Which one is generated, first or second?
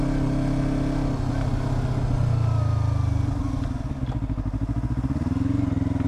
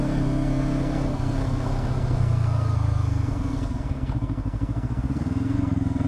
second